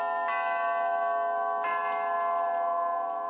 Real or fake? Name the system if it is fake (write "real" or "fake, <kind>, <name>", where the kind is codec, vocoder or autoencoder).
real